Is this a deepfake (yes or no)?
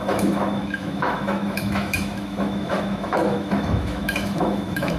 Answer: yes